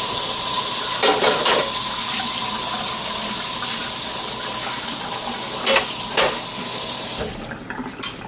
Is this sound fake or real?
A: real